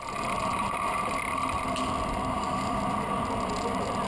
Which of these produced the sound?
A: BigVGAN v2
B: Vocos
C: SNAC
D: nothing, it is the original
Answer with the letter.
D